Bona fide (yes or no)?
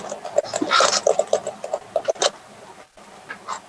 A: yes